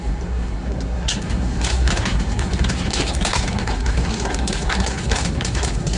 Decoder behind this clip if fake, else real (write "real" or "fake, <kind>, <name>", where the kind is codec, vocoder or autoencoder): fake, codec, SNAC